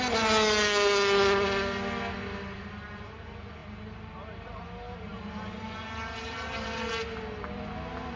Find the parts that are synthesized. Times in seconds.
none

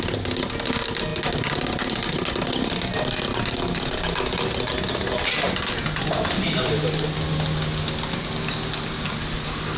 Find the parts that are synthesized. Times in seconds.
none